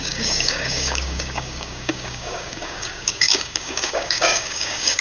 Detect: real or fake fake